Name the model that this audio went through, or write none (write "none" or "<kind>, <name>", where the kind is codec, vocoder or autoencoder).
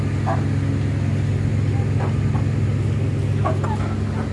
none